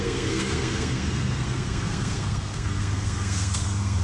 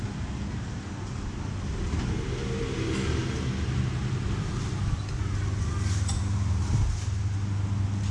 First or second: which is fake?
first